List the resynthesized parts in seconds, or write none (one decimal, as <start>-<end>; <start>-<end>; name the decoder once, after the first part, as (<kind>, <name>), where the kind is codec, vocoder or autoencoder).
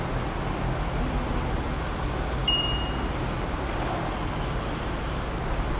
none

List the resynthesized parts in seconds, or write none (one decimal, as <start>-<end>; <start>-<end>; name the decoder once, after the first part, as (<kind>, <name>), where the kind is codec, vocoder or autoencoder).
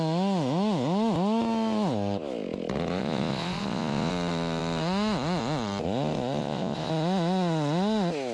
3.0-4.1 (vocoder, Vocos); 6.4-6.9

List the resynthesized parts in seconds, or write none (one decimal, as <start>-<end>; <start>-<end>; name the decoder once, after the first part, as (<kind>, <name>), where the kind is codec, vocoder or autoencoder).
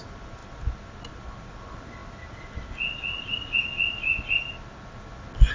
none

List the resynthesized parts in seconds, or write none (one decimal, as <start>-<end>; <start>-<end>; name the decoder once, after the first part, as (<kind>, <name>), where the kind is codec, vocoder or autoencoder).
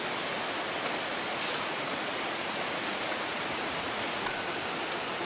1.3-4.4 (vocoder, Vocos)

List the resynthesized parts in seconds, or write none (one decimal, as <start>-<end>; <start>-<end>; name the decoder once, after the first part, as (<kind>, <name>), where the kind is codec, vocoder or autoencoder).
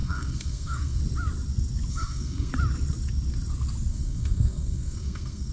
0.0-1.0 (codec, SNAC); 1.9-2.5; 3.9-5.5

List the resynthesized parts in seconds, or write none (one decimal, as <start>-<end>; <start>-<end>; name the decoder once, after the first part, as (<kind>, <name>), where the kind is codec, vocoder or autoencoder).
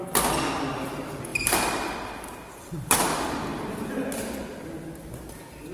none